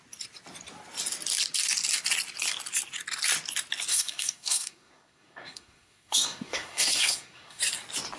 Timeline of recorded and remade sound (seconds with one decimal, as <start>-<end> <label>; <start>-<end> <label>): 0.0-3.9 recorded; 3.9-7.6 remade; 7.6-8.2 recorded